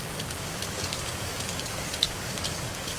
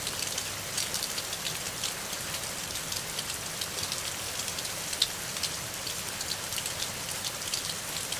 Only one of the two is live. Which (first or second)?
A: second